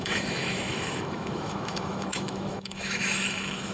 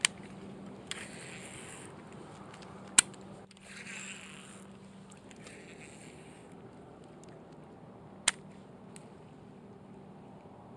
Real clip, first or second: second